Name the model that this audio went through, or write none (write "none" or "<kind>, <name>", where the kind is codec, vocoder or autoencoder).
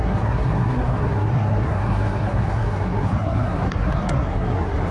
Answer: codec, SNAC